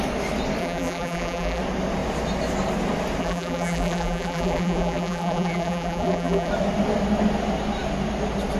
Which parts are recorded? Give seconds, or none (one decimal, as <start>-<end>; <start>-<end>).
0.0-0.6; 1.6-3.2; 6.5-8.6